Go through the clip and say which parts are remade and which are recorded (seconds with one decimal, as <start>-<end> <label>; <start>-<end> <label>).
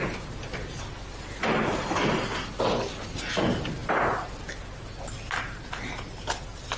0.0-6.8 recorded